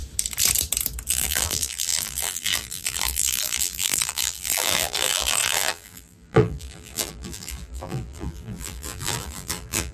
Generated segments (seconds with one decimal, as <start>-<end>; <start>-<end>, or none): 1.1-9.9